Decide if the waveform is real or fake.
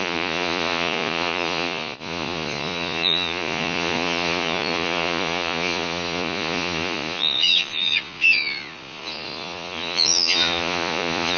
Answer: fake